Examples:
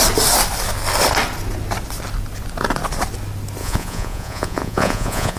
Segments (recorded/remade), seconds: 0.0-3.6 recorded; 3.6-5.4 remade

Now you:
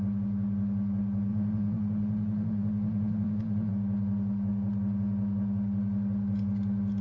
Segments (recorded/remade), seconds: 0.0-1.3 recorded; 1.3-3.7 remade; 3.7-7.0 recorded

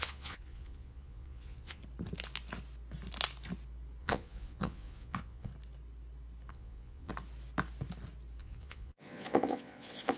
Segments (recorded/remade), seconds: 0.0-1.8 remade; 1.8-4.0 recorded; 4.0-5.5 remade; 5.5-6.5 recorded; 6.5-7.1 remade; 7.1-8.4 recorded; 8.4-10.2 remade

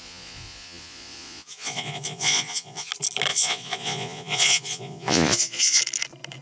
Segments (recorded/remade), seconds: 0.0-2.9 remade; 2.9-3.3 recorded; 3.3-5.8 remade; 5.8-6.4 recorded